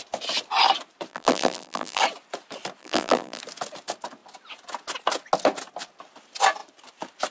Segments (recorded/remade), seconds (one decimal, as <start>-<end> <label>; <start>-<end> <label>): 0.0-1.1 recorded; 1.1-2.0 remade; 2.0-2.8 recorded; 2.8-3.4 remade; 3.4-7.3 recorded